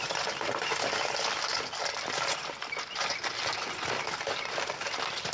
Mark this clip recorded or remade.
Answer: recorded